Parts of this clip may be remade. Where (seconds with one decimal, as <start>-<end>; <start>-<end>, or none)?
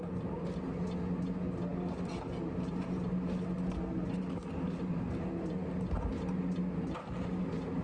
none